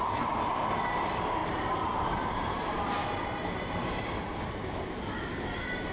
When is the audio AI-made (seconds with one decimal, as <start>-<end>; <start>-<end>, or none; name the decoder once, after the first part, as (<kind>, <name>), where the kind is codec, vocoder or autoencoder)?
1.4-4.2 (vocoder, BigVGAN v2)